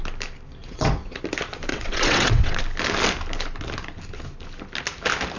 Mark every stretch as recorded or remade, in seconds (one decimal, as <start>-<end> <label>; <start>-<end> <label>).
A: 0.0-0.6 recorded; 0.6-1.2 remade; 1.2-1.7 recorded; 1.7-2.6 remade; 2.6-5.4 recorded